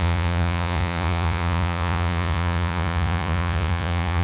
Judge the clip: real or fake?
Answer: fake